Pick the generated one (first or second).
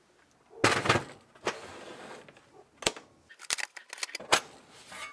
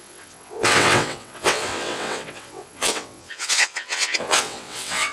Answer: second